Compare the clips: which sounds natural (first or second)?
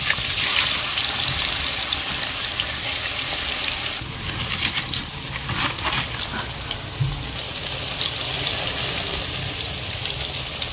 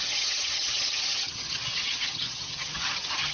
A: first